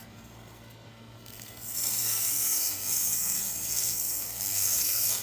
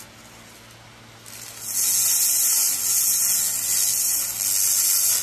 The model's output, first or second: first